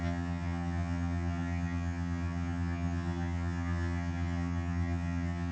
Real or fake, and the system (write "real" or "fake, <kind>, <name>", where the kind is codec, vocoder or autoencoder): fake, vocoder, HiFi-GAN